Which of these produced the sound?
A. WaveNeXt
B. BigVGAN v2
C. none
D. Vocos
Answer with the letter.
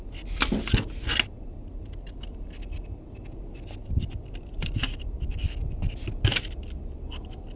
C